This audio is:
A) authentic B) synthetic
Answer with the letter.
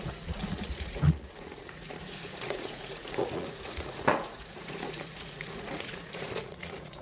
B